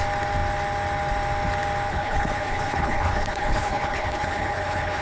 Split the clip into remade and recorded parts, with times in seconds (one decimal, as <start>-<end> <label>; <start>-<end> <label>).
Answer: 0.0-1.9 recorded; 1.9-5.0 remade